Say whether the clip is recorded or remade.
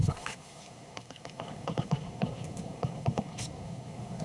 remade